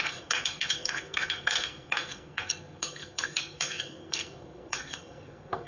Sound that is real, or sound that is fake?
fake